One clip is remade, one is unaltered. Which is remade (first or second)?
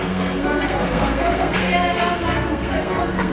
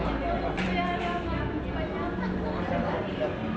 first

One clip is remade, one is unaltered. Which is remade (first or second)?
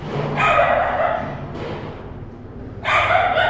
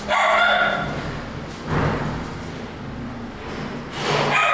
first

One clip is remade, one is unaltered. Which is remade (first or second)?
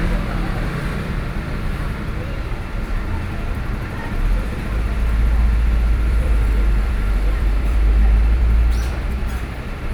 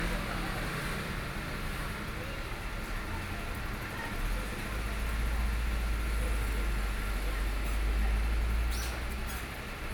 first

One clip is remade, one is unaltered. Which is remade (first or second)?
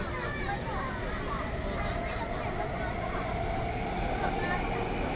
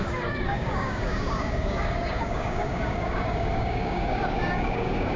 second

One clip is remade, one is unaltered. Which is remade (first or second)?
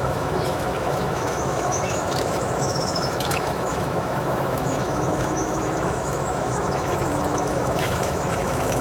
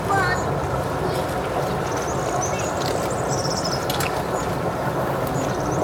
first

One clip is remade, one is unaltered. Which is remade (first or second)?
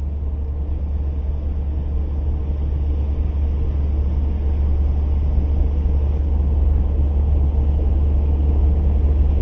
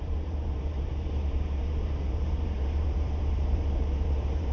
second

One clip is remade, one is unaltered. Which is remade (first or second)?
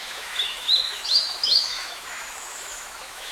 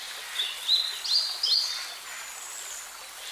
first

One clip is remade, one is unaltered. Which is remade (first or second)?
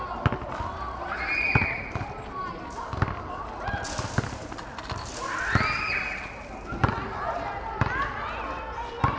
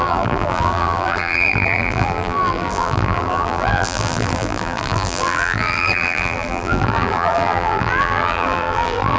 second